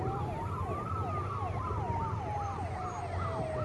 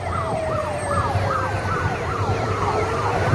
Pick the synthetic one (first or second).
second